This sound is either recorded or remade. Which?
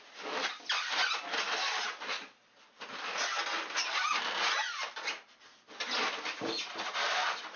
recorded